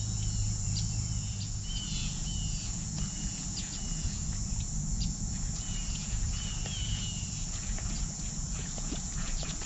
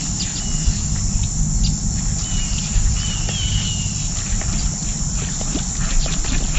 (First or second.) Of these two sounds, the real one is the second